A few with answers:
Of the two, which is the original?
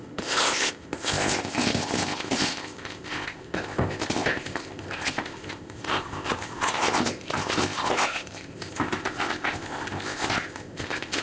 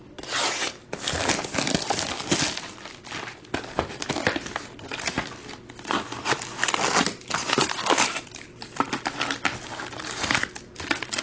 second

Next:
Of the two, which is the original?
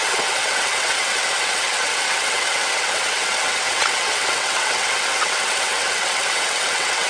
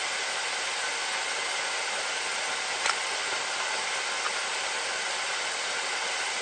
second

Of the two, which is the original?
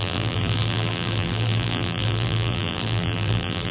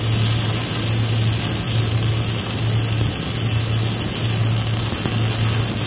second